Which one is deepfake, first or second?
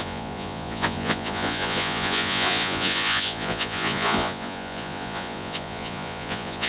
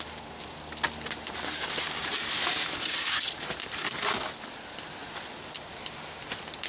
first